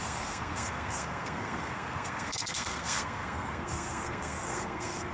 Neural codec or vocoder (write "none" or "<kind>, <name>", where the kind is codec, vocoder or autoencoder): codec, SNAC